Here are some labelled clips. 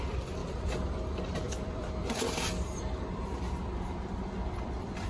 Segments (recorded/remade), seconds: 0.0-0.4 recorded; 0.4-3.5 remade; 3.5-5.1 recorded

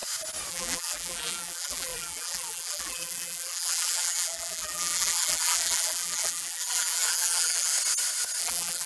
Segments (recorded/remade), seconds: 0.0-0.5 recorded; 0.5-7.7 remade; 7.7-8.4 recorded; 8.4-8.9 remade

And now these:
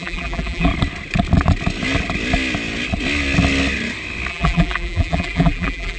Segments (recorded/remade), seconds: 0.0-0.7 remade; 0.7-4.3 recorded; 4.3-6.0 remade

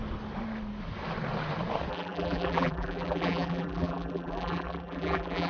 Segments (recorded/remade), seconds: 0.0-1.9 recorded; 1.9-5.5 remade